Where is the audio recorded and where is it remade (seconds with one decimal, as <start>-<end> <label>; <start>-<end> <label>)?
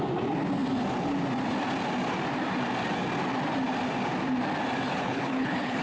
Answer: 0.0-4.9 recorded; 4.9-5.8 remade